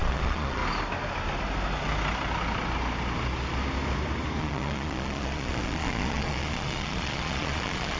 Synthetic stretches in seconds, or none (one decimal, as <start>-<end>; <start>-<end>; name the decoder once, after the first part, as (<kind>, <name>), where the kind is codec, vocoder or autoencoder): 0.0-0.6 (vocoder, Vocos); 4.4-8.0